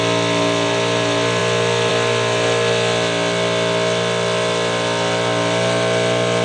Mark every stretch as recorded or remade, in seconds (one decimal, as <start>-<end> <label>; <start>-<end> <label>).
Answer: 0.0-6.4 recorded